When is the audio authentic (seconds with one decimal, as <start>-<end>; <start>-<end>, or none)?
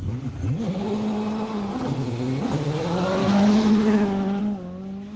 0.0-3.2; 4.4-5.2